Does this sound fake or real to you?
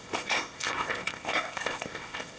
fake